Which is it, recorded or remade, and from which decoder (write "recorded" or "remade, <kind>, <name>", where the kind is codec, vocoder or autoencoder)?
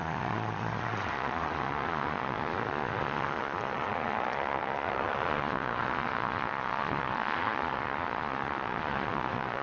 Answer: remade, vocoder, Vocos